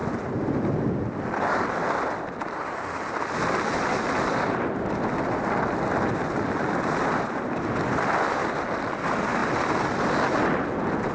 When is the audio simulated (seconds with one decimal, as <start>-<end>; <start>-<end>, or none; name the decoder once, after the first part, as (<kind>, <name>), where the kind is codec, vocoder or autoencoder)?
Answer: none

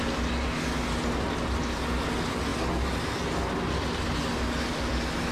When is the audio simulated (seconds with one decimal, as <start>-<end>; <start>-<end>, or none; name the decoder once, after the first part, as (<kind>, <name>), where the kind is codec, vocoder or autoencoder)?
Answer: none

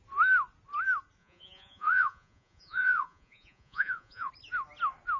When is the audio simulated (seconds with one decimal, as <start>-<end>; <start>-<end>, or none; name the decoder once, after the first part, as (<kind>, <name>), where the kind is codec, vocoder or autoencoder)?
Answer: 1.2-4.3 (vocoder, Vocos)

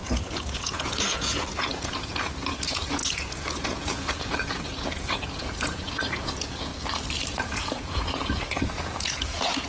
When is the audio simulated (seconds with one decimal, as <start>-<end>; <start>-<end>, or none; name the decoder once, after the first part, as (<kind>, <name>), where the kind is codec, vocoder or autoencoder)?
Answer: 0.0-6.7 (vocoder, Vocos); 7.3-9.7